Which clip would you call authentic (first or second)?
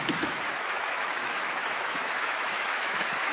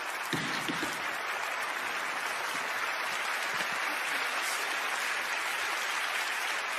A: second